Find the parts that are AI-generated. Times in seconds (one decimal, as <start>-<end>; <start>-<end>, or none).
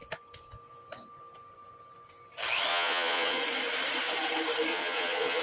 2.7-3.4; 4.7-5.4